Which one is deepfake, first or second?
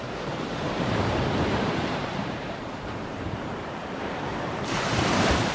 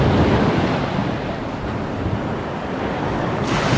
first